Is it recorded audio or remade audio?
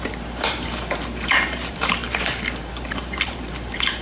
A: remade